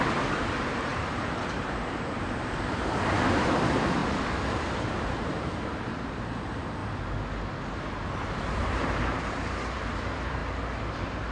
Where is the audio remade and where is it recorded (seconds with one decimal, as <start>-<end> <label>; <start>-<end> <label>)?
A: 0.0-4.0 remade; 4.0-4.6 recorded; 4.6-6.8 remade; 6.8-8.6 recorded; 8.6-10.4 remade; 10.4-11.3 recorded